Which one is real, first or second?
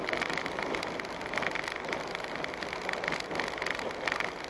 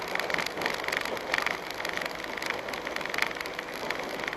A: second